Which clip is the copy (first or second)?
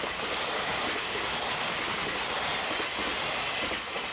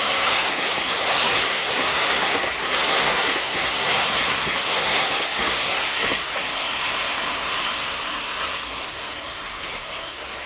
second